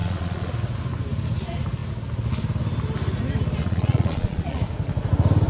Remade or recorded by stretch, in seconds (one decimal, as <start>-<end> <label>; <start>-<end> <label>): 0.0-0.5 remade; 0.5-3.6 recorded; 3.6-4.6 remade; 4.6-5.5 recorded